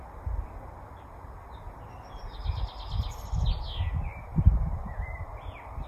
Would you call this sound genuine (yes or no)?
yes